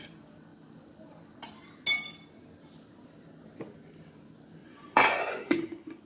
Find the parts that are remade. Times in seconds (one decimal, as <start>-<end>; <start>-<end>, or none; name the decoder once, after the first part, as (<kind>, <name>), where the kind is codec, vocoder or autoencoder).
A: 4.6-6.1 (vocoder, Vocos)